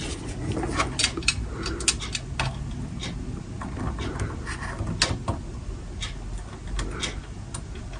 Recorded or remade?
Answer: recorded